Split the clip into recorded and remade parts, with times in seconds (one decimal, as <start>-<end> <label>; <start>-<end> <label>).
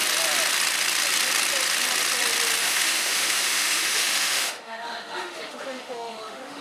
0.0-2.6 recorded; 2.6-6.6 remade